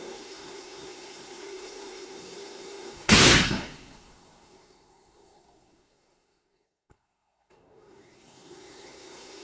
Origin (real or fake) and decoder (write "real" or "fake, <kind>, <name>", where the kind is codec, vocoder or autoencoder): fake, codec, SNAC